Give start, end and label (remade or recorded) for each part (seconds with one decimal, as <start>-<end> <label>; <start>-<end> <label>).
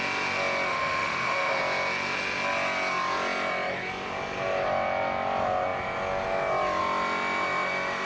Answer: 0.0-0.7 recorded; 0.7-1.6 remade; 1.6-8.0 recorded